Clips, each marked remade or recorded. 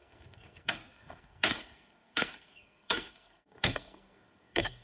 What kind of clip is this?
remade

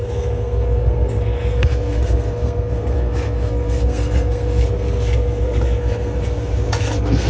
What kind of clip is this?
remade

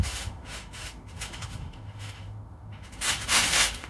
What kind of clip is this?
remade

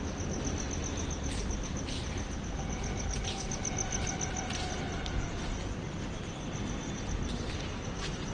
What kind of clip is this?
recorded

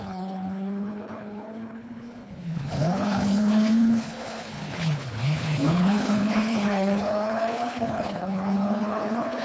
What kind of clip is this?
remade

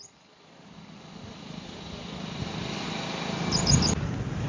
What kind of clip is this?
recorded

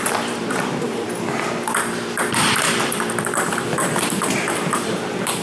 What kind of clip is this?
remade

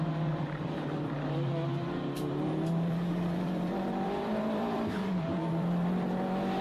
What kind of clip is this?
remade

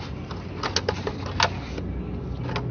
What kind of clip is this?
recorded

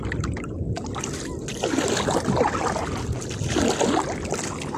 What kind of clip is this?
recorded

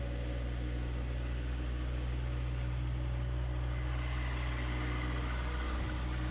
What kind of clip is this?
recorded